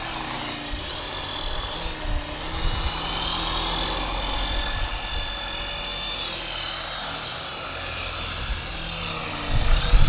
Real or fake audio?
real